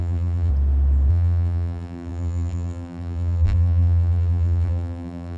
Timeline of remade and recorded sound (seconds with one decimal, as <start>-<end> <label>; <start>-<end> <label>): 0.0-0.5 remade; 0.5-1.1 recorded; 1.1-5.4 remade